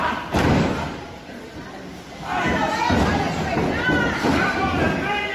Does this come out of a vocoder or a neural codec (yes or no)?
no